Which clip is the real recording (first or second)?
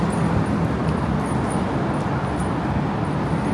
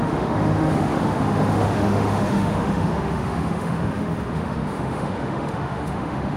first